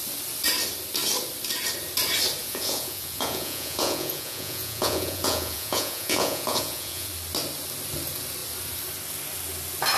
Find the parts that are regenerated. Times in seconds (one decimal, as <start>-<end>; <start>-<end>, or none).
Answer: 2.4-7.1

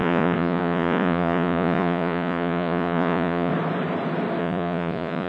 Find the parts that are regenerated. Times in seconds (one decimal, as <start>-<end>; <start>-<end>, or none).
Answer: 0.0-3.5; 4.4-5.3

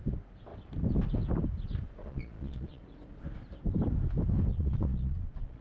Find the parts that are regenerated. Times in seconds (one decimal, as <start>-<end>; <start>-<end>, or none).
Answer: 2.0-2.8; 4.5-5.6